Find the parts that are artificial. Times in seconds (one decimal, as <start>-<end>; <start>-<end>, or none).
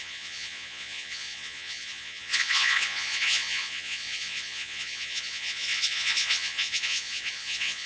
0.0-7.9